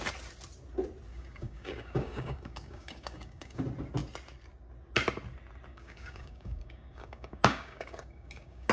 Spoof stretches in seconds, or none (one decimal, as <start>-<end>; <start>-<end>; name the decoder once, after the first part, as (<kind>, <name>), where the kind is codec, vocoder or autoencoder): 1.1-3.6 (codec, DAC); 5.7-8.7